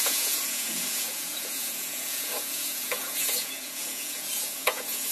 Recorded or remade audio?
remade